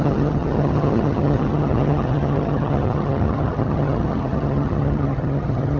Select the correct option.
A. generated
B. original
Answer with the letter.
A